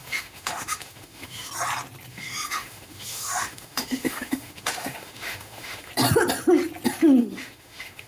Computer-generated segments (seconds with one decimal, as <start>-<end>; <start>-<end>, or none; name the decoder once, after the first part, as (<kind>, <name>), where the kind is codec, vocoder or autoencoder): 0.0-1.5 (autoencoder, DAC-VAE); 2.1-5.9; 7.2-8.1